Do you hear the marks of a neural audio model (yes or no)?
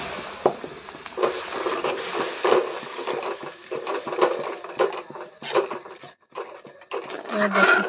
no